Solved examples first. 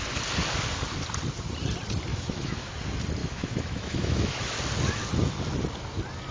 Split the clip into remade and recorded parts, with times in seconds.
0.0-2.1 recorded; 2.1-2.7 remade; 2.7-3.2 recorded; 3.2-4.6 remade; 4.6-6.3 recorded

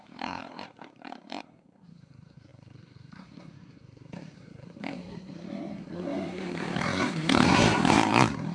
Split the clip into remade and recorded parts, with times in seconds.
0.0-8.5 remade

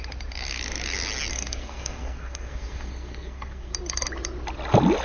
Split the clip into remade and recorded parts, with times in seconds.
0.0-1.3 recorded; 1.3-3.7 remade; 3.7-5.0 recorded

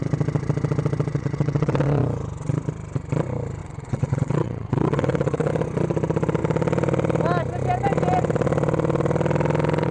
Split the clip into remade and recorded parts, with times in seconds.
0.0-1.1 recorded; 1.1-2.0 remade; 2.0-3.6 recorded; 3.6-5.5 remade; 5.5-9.9 recorded

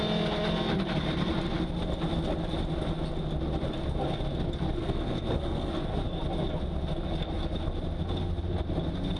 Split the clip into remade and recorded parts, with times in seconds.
0.0-4.8 recorded; 4.8-5.7 remade; 5.7-9.2 recorded

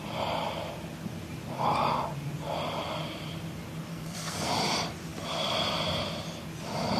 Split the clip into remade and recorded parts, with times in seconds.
0.0-3.9 recorded; 3.9-4.5 remade; 4.5-7.0 recorded

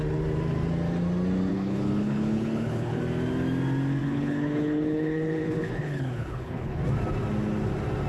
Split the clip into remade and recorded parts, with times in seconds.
0.0-1.5 recorded; 1.5-3.0 remade; 3.0-4.0 recorded; 4.0-6.8 remade; 6.8-8.1 recorded

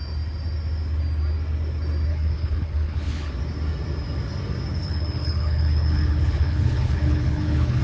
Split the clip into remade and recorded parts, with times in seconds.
0.0-2.1 recorded; 2.1-3.3 remade; 3.3-4.7 recorded; 4.7-7.8 remade